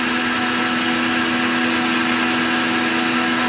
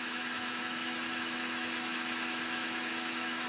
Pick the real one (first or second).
first